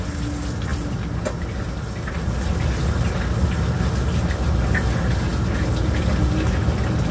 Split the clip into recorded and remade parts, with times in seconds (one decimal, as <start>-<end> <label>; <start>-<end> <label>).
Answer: 0.0-7.1 recorded